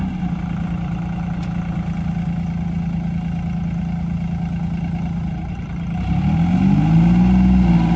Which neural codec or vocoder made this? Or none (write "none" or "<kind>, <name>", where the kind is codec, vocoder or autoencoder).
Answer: none